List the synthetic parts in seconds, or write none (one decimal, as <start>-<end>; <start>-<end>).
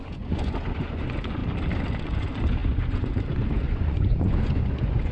0.0-1.4; 2.0-5.1